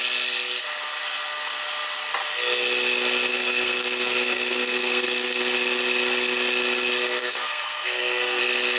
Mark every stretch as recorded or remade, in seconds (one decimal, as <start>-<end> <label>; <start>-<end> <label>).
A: 0.0-3.3 recorded; 3.3-5.4 remade; 5.4-7.2 recorded; 7.2-8.4 remade; 8.4-8.8 recorded